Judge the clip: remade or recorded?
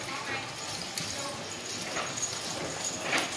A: recorded